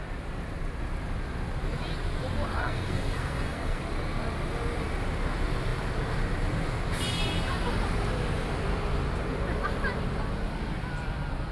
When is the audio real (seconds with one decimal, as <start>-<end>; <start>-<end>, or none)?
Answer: 0.0-2.5; 3.8-11.5